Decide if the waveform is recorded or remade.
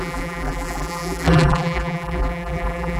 remade